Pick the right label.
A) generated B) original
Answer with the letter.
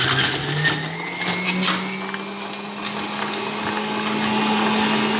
B